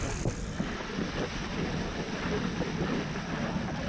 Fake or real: real